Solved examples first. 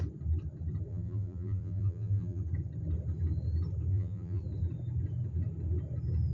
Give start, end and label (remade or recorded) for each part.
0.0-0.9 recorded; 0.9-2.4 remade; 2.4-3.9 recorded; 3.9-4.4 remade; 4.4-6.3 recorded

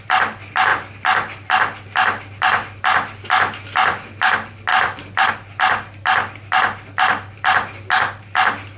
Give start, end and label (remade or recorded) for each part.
0.0-4.7 recorded; 4.7-5.3 remade; 5.3-8.8 recorded

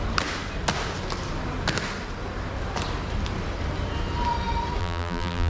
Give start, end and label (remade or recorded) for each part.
0.0-4.8 recorded; 4.8-5.5 remade

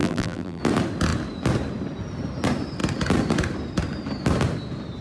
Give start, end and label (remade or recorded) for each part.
0.0-0.6 remade; 0.6-5.0 recorded

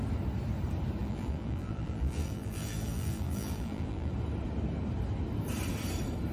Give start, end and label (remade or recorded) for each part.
0.0-1.0 recorded; 1.0-4.1 remade; 4.1-6.3 recorded

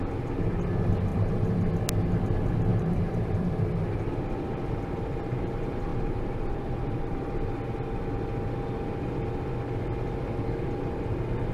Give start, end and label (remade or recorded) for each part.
0.0-1.1 recorded; 1.1-1.7 remade; 1.7-2.7 recorded; 2.7-4.1 remade; 4.1-5.9 recorded; 5.9-7.2 remade; 7.2-11.5 recorded

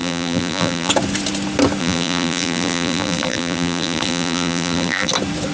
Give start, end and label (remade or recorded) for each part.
0.0-0.9 remade; 0.9-1.8 recorded; 1.8-5.1 remade; 5.1-5.5 recorded

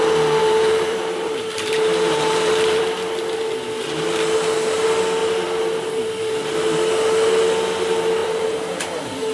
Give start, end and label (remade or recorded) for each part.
0.0-0.4 recorded; 0.4-2.8 remade; 2.8-8.2 recorded; 8.2-8.8 remade; 8.8-9.3 recorded